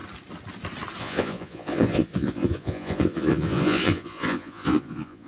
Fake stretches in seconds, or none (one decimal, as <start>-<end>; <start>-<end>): 1.0-5.3